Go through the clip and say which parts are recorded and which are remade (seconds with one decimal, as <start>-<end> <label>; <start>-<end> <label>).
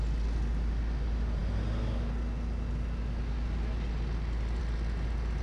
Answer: 0.0-5.4 recorded